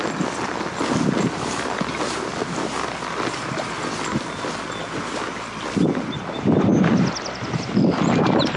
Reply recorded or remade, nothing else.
recorded